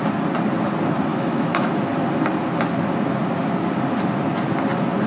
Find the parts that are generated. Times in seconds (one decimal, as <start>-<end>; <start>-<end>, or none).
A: 1.1-1.8